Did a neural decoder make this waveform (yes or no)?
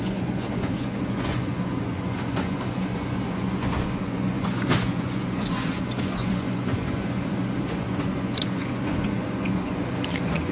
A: yes